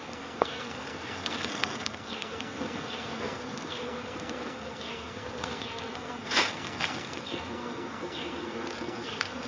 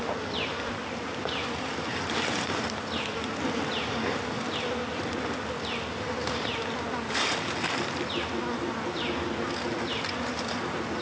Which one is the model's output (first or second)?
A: first